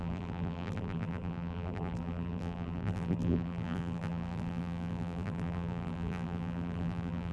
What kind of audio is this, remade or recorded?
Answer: remade